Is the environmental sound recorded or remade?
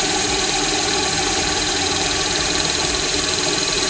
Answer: remade